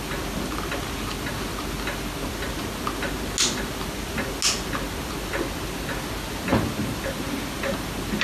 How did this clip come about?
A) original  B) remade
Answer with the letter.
A